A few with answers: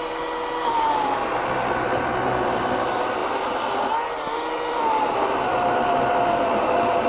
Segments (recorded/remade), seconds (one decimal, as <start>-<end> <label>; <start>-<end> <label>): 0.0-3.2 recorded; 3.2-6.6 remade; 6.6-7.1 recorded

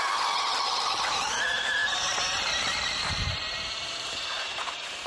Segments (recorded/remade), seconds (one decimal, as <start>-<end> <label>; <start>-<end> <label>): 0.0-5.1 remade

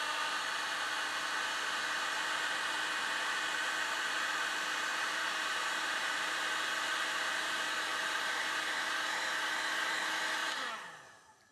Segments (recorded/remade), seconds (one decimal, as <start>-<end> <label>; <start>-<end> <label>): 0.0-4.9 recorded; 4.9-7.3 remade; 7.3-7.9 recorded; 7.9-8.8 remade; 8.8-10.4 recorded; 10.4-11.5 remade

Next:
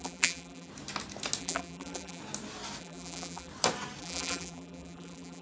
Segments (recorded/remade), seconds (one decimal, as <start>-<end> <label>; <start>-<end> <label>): 0.0-0.7 remade; 0.7-1.4 recorded; 1.4-2.2 remade; 2.2-2.8 recorded; 2.8-3.5 remade; 3.5-4.0 recorded; 4.0-5.4 remade

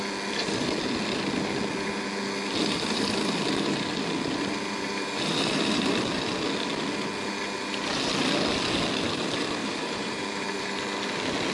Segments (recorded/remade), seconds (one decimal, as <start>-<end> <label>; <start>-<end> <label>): 0.0-9.6 recorded; 9.6-10.8 remade; 10.8-11.5 recorded